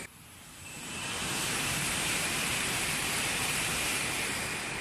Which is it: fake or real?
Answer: fake